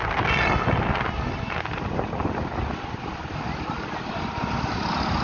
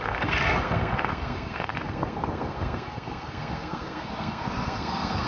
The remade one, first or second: second